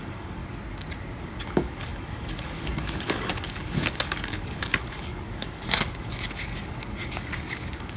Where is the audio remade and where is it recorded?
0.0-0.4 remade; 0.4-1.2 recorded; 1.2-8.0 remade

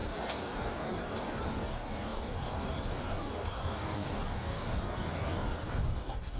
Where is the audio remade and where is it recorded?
0.0-6.4 remade